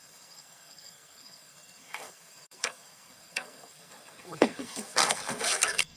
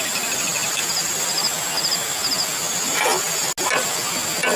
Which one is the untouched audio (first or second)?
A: second